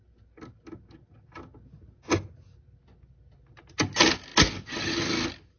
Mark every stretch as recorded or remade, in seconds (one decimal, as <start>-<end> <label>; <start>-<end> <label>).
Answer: 0.0-5.6 recorded